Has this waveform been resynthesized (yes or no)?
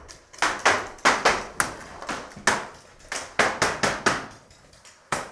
no